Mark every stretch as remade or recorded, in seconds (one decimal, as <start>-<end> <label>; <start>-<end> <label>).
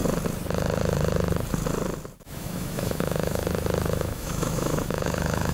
0.0-2.2 recorded; 2.2-3.4 remade; 3.4-3.9 recorded; 3.9-5.5 remade